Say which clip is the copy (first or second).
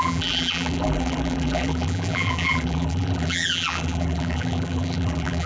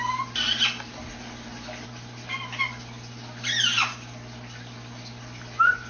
first